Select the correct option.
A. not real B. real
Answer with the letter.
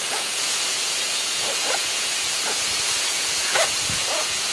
A